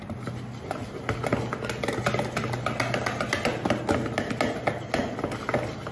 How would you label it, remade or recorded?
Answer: recorded